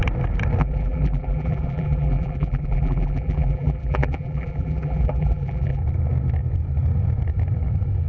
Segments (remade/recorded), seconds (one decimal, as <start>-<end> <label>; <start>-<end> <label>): 0.0-0.6 recorded; 0.6-5.8 remade; 5.8-8.1 recorded